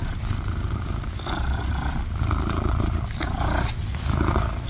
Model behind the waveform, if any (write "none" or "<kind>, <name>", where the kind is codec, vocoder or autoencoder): none